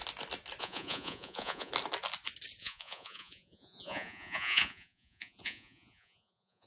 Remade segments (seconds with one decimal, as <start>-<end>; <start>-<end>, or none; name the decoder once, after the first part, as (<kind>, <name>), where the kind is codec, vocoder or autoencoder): 0.6-1.7 (vocoder, Vocos); 2.6-6.7